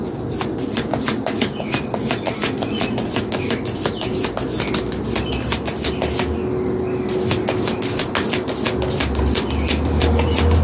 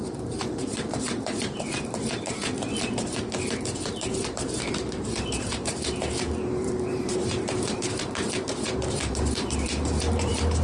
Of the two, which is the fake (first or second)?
second